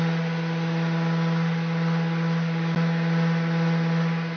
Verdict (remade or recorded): recorded